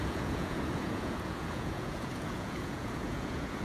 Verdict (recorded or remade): remade